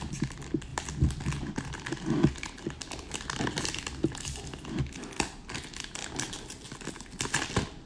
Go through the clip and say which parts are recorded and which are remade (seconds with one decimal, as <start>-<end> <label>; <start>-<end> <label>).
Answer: 0.0-7.9 recorded